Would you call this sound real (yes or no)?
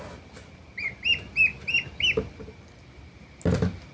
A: yes